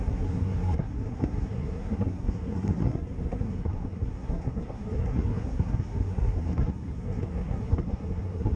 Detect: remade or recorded remade